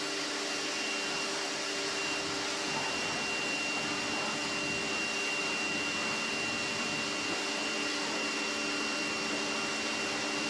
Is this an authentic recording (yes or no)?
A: yes